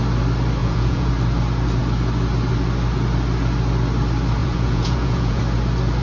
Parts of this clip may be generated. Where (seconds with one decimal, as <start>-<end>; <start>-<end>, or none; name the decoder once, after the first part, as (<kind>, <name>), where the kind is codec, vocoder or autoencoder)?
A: 0.6-1.1 (vocoder, Vocos); 4.4-5.4